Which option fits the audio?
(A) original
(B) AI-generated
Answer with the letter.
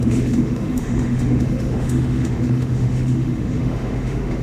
B